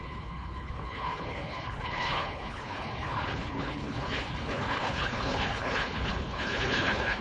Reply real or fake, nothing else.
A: fake